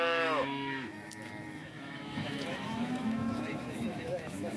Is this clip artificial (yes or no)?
yes